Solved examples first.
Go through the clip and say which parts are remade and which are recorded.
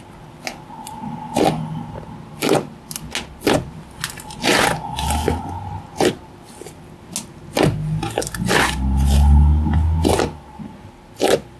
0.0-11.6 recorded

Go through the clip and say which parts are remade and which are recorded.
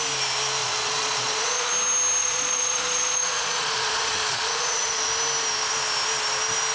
0.0-0.6 recorded; 0.6-1.7 remade; 1.7-2.2 recorded; 2.2-5.1 remade; 5.1-6.7 recorded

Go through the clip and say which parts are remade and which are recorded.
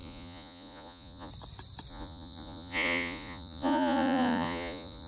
0.0-1.3 remade; 1.3-1.9 recorded; 1.9-5.1 remade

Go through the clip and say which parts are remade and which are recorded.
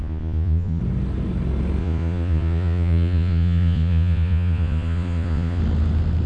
0.0-0.8 remade; 0.8-1.8 recorded; 1.8-5.6 remade; 5.6-6.3 recorded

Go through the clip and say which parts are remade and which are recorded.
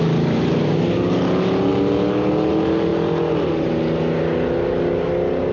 0.0-5.5 recorded